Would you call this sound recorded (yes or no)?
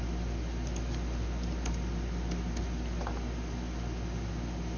yes